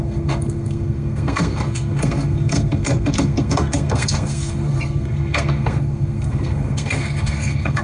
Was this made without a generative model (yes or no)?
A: no